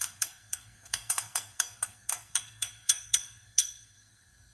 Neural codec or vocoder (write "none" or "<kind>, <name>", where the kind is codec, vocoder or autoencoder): codec, SNAC